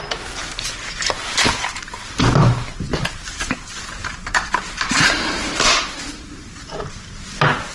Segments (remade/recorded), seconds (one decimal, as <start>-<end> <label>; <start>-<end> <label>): 0.0-2.9 recorded; 2.9-3.5 remade; 3.5-4.0 recorded; 4.0-6.7 remade; 6.7-7.7 recorded